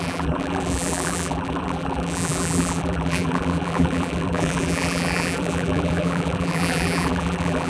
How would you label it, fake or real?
fake